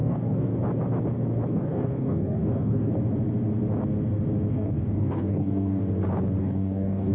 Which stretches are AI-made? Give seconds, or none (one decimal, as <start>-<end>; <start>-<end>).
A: 0.0-0.5; 1.5-2.9; 4.5-5.8; 6.4-7.1